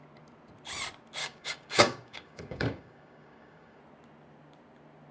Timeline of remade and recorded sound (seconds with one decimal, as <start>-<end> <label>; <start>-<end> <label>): 0.0-1.2 recorded; 1.2-3.8 remade; 3.8-5.1 recorded

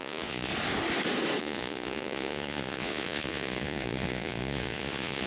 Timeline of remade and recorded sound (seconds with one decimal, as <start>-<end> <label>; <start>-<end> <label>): 0.0-0.5 remade; 0.5-1.4 recorded; 1.4-5.3 remade